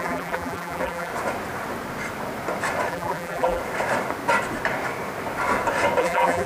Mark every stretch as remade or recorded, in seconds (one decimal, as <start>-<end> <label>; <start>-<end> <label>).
0.0-1.1 remade; 1.1-2.9 recorded; 2.9-3.6 remade; 3.6-6.0 recorded; 6.0-6.5 remade